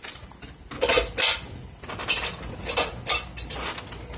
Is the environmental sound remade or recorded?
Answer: recorded